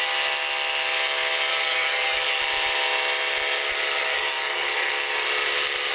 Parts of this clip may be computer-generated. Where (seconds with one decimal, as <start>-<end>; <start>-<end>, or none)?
1.5-2.4; 4.0-4.9